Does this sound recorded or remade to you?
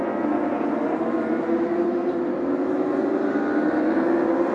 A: recorded